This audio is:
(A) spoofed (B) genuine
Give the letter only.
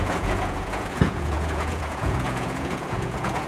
A